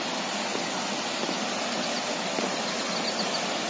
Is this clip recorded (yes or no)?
yes